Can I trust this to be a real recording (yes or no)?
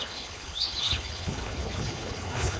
no